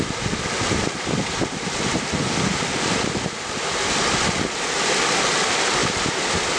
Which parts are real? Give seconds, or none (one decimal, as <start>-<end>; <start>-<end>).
0.0-6.6